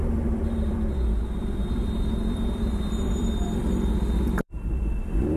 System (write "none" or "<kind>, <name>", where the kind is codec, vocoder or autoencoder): vocoder, BigVGAN v2